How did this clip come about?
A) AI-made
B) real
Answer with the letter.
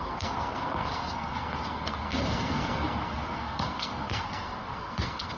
A